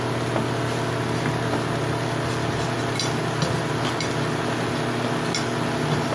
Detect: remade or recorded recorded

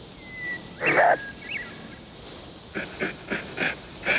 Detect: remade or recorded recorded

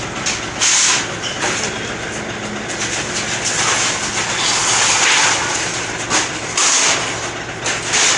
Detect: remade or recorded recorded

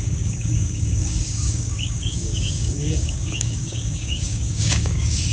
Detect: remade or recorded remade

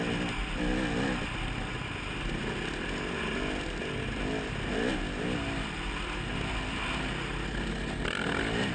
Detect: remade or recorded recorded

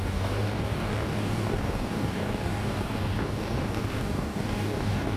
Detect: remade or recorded remade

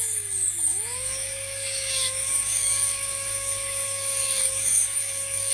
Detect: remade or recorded remade